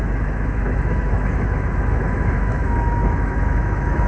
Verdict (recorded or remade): remade